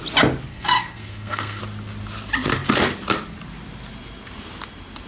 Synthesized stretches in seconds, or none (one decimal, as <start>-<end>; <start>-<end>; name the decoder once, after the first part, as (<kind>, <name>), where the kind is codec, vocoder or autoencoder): 0.5-1.6 (codec, SNAC)